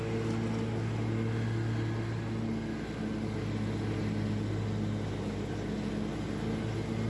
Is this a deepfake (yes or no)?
no